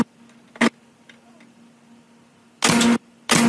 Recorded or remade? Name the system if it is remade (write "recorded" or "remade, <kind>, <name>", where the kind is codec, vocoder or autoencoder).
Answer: recorded